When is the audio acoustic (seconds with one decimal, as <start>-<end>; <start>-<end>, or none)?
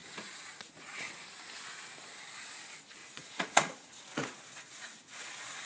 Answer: 1.1-3.0